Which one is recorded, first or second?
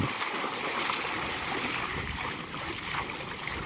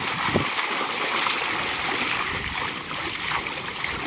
first